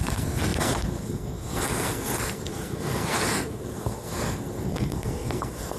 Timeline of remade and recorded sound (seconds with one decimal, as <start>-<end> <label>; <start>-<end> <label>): 0.0-5.8 remade